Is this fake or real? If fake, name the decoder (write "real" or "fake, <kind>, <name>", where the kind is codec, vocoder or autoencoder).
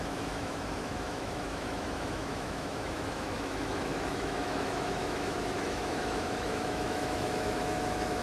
fake, autoencoder, DAC-VAE